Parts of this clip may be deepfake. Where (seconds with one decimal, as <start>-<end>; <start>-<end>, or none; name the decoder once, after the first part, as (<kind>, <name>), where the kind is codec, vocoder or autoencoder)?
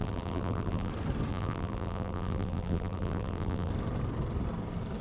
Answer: 0.0-0.9 (vocoder, BigVGAN v2); 1.3-3.7